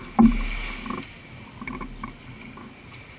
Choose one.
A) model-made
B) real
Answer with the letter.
B